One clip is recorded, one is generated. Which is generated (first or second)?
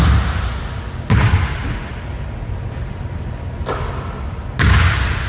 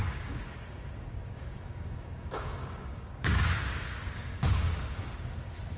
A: second